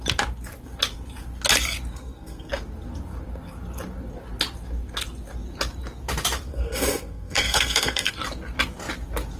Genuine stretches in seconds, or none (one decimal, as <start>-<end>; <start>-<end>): 0.0-1.9; 2.5-6.5; 8.1-9.4

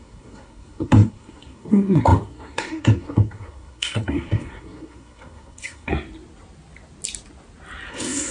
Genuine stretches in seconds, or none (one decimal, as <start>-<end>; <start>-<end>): 5.9-7.9

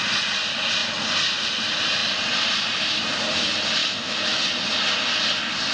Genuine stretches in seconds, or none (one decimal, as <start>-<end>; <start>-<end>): 0.0-3.8; 4.4-5.7

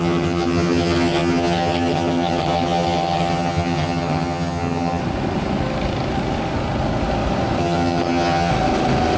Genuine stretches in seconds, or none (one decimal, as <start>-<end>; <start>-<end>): 5.0-7.6; 8.5-9.2